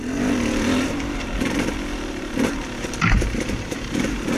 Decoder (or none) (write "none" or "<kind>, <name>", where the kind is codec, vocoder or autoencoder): vocoder, BigVGAN v2